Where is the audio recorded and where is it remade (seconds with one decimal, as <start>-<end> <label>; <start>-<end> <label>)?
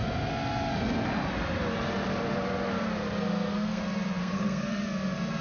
0.0-3.2 recorded; 3.2-3.8 remade; 3.8-4.2 recorded; 4.2-4.8 remade; 4.8-5.4 recorded